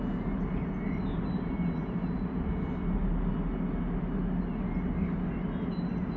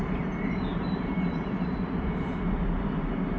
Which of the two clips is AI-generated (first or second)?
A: second